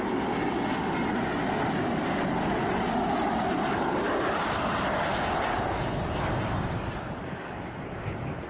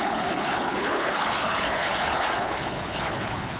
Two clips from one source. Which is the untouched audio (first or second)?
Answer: first